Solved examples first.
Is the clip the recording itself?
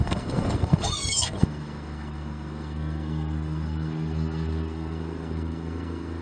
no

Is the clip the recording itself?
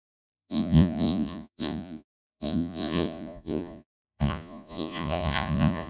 no